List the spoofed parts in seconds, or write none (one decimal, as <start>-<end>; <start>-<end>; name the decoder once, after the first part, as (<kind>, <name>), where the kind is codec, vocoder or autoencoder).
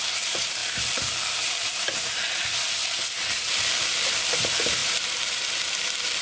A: 4.8-5.4 (vocoder, BigVGAN v2)